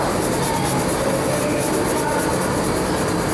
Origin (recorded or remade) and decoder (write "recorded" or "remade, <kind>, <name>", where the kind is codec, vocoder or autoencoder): recorded